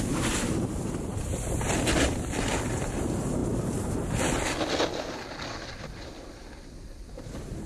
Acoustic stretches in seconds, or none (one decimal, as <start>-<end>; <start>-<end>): 0.0-7.7